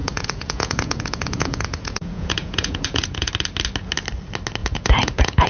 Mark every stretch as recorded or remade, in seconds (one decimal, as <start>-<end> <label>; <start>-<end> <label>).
0.0-3.3 remade; 3.3-4.6 recorded; 4.6-5.5 remade